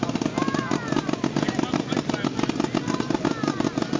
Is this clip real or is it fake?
real